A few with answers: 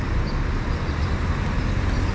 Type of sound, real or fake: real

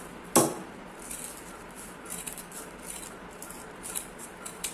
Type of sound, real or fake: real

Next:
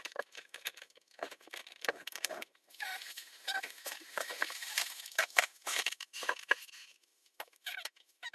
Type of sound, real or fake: fake